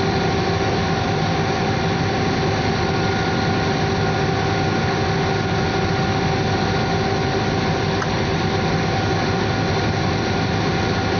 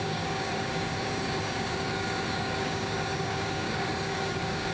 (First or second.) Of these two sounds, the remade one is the second